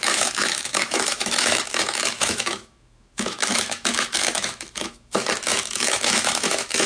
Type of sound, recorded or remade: remade